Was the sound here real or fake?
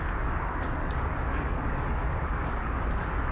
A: fake